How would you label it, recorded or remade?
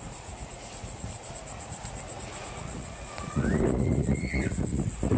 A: remade